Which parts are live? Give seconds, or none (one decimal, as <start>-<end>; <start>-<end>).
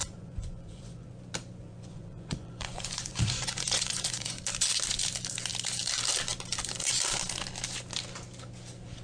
1.1-1.6; 4.4-9.0